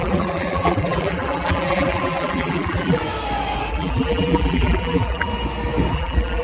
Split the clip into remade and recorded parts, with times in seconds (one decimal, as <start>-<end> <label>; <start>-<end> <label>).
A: 0.0-3.0 remade; 3.0-3.7 recorded; 3.7-5.3 remade; 5.3-5.9 recorded; 5.9-6.4 remade